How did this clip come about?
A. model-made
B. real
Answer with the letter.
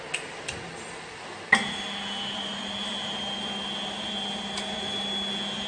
B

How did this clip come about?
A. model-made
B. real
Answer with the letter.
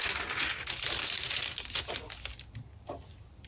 B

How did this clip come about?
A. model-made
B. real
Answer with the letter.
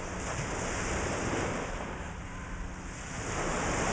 B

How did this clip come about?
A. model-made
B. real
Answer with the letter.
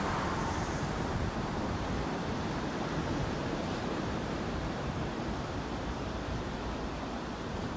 A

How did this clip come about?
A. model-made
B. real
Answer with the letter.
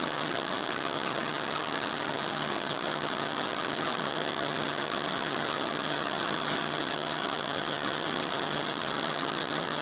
A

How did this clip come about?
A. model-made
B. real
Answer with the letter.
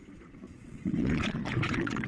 A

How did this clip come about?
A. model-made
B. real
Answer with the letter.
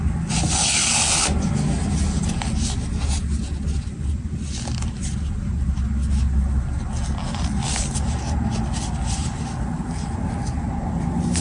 B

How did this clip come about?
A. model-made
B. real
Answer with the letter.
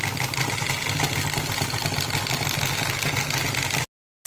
B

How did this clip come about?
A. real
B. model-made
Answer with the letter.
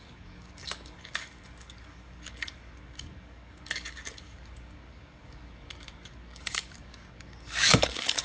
B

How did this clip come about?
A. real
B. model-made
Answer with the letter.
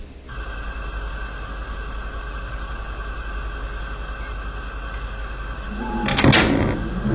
A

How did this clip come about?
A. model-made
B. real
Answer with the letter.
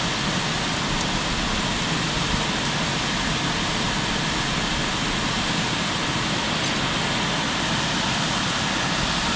B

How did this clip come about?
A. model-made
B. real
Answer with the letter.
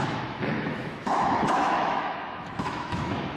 A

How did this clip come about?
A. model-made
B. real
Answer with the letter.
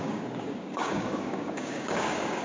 A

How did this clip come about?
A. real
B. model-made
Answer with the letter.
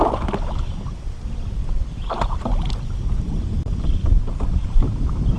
A